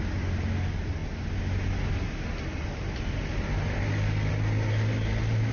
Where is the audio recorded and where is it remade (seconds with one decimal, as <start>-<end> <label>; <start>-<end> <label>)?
0.0-5.5 recorded